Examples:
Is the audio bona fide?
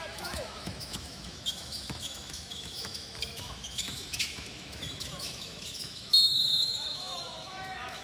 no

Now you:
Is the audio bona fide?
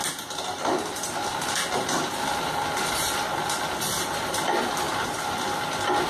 yes